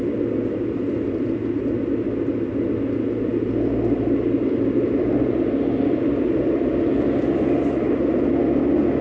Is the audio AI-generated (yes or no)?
no